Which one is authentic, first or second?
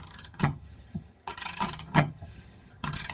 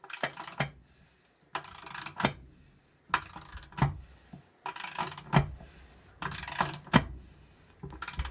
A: second